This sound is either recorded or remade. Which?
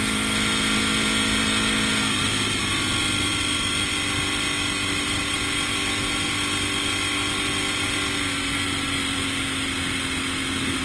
recorded